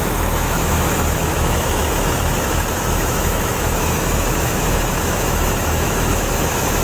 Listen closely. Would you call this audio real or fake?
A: fake